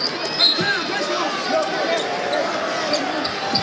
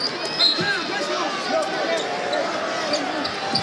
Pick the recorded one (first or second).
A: second